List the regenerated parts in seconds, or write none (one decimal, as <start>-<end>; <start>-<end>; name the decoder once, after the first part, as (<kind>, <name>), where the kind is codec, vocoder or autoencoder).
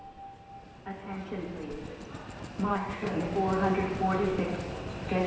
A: 2.7-3.2 (codec, DAC)